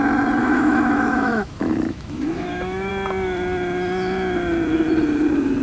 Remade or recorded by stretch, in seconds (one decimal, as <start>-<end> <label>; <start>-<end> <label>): 0.0-0.4 recorded; 0.4-2.9 remade; 2.9-5.6 recorded